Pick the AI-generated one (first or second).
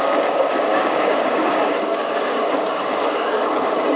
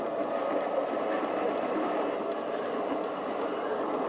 first